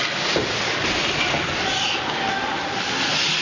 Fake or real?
real